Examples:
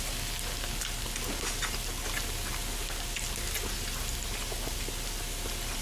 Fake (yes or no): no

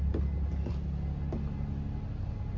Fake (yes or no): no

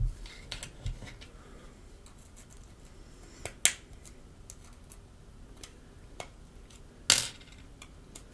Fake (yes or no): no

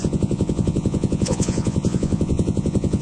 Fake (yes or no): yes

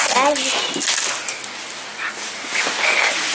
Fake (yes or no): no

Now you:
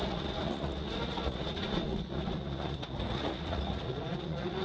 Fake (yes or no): yes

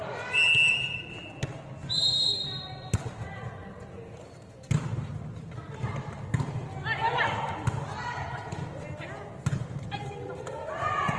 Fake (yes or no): no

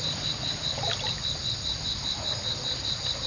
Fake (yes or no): no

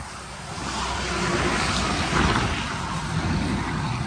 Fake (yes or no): no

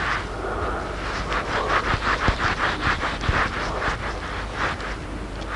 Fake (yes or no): no